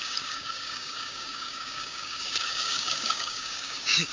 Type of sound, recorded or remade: remade